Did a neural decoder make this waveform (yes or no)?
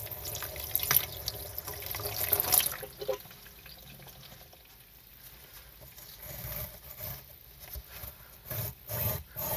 no